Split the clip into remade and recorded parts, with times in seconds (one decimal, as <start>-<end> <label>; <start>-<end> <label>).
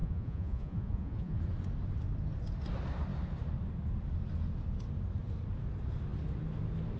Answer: 0.0-1.4 remade; 1.4-7.0 recorded